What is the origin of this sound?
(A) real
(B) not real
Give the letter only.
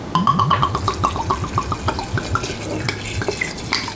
A